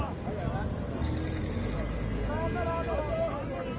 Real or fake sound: real